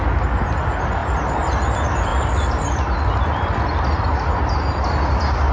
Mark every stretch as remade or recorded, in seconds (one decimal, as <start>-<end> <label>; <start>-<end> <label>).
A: 0.0-1.0 recorded; 1.0-1.6 remade; 1.6-2.1 recorded; 2.1-2.7 remade; 2.7-5.5 recorded